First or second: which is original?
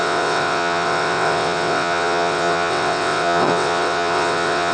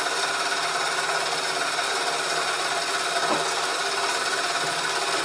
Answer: second